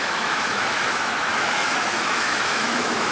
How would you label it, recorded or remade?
remade